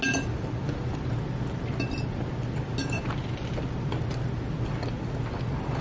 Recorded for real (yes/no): yes